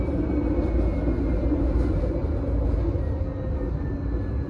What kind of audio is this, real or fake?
real